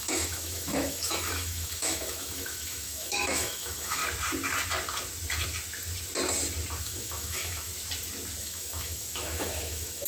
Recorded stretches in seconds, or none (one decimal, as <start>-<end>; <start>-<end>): 4.0-6.8; 7.7-8.4